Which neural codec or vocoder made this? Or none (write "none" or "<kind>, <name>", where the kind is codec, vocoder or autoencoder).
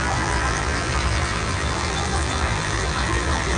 vocoder, BigVGAN v2